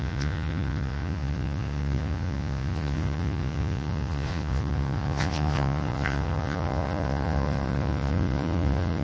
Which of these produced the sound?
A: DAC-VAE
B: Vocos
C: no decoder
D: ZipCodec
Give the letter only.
B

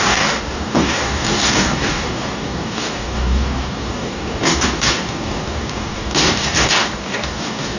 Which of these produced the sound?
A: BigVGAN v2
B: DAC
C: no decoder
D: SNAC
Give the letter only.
B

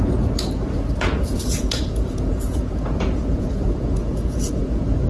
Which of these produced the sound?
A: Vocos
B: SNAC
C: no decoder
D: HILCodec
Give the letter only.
A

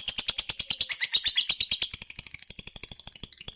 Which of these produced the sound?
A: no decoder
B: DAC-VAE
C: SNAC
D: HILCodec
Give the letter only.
A